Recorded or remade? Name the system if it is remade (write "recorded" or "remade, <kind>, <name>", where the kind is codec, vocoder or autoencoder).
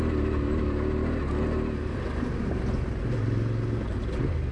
recorded